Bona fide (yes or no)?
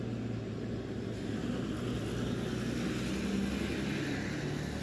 yes